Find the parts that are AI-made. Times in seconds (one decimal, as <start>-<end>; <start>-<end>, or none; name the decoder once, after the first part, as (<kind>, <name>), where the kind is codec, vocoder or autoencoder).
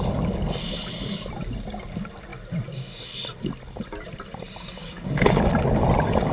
4.8-5.5 (codec, DAC)